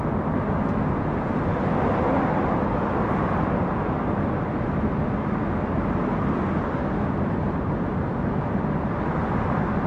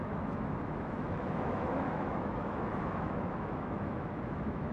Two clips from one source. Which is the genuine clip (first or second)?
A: first